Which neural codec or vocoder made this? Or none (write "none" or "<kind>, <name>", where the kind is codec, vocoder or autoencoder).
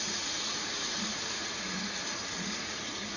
vocoder, Vocos